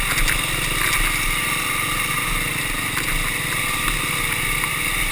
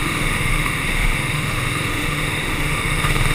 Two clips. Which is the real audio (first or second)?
first